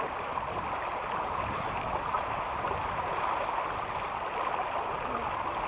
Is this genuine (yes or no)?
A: yes